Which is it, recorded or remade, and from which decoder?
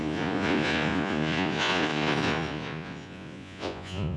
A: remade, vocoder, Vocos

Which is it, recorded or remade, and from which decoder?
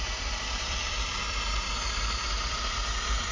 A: remade, vocoder, BigVGAN v2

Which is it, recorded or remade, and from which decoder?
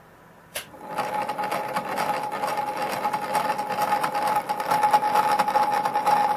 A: recorded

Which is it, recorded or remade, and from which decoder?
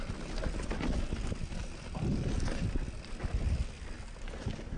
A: recorded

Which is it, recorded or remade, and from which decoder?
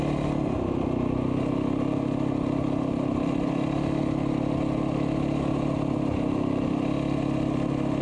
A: recorded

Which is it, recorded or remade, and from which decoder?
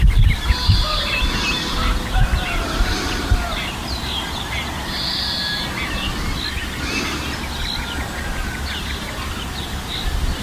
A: recorded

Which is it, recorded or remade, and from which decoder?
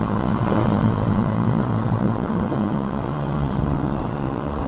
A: remade, vocoder, WaveNeXt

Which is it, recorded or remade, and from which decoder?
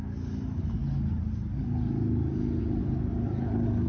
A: recorded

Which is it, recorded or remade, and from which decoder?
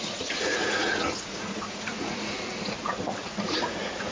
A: remade, vocoder, Vocos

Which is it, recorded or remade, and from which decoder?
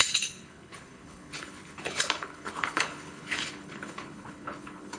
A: remade, codec, HILCodec